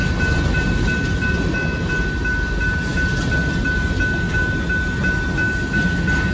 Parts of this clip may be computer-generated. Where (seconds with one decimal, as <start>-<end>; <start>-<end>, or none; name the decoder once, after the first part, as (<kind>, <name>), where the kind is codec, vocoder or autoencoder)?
none